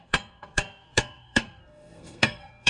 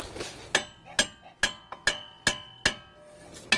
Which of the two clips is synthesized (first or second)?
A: first